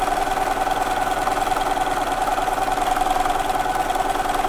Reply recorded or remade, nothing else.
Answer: recorded